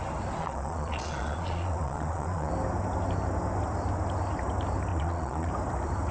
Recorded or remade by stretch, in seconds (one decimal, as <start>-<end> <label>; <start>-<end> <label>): 0.0-0.4 recorded; 0.4-2.5 remade; 2.5-4.9 recorded; 4.9-5.5 remade; 5.5-6.1 recorded

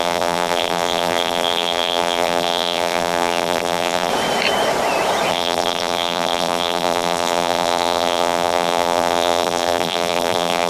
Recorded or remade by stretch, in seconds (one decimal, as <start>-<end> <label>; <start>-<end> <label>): 0.0-4.1 remade; 4.1-5.3 recorded; 5.3-10.7 remade